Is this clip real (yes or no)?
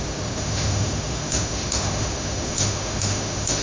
no